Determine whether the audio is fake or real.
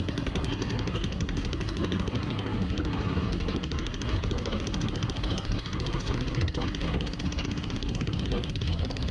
fake